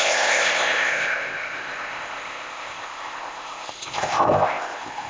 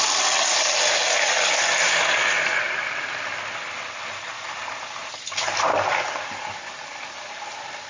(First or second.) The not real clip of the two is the first